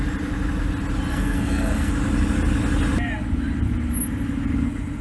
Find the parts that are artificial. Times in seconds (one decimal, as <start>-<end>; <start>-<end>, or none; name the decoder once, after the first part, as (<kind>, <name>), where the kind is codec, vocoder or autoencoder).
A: 1.1-1.9 (codec, SNAC)